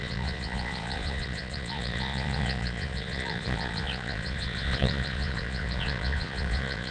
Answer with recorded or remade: remade